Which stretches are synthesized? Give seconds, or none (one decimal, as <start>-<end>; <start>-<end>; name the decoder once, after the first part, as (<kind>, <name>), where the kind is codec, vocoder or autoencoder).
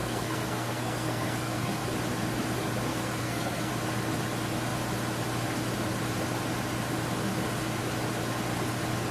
0.0-1.8 (codec, SNAC); 2.9-3.7